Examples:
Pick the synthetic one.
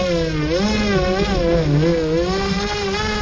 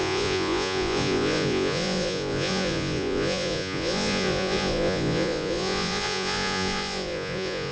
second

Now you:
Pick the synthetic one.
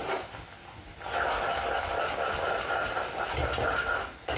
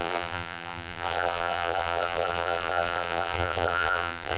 second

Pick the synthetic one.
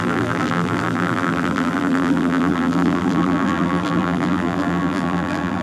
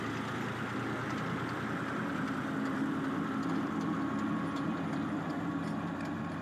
first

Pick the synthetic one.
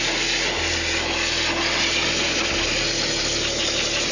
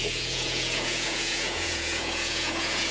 second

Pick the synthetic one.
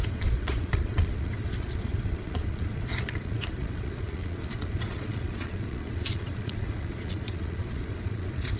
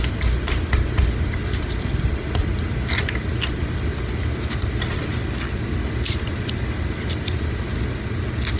first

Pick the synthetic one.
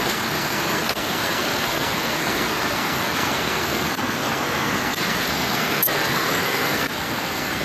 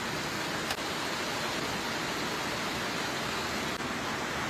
first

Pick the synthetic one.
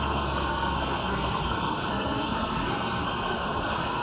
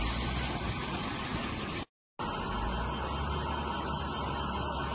first